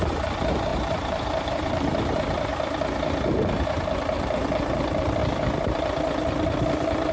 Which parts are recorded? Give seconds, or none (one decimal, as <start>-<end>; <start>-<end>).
2.5-3.7; 5.2-6.6